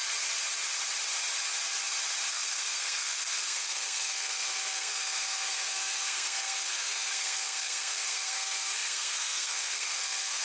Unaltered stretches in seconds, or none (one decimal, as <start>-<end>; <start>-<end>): 0.0-2.3